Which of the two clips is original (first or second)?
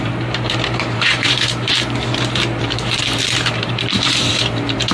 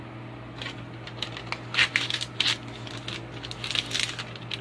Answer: second